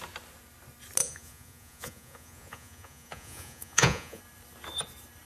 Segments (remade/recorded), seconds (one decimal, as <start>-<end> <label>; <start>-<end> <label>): 0.0-1.0 recorded; 1.0-4.2 remade; 4.2-5.3 recorded